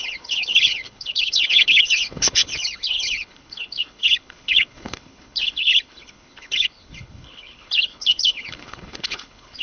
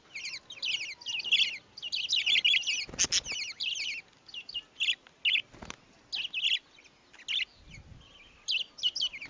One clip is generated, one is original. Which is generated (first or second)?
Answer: first